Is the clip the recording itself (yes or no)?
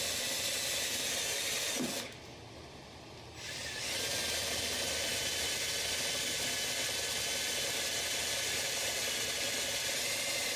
yes